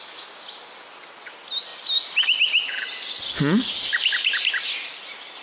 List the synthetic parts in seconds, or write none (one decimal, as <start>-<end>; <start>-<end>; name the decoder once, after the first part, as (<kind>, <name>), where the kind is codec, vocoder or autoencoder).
none